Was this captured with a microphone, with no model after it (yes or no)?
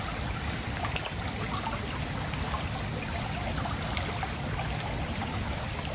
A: yes